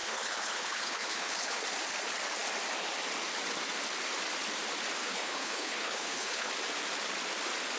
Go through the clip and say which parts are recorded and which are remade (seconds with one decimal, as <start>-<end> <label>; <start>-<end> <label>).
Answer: 0.0-1.6 remade; 1.6-5.0 recorded; 5.0-6.5 remade; 6.5-7.8 recorded